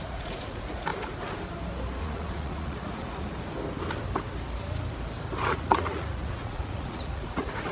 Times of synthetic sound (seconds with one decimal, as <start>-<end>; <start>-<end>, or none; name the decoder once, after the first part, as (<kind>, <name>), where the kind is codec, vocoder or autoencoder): 0.0-0.9 (vocoder, Vocos); 2.0-3.3; 5.5-7.7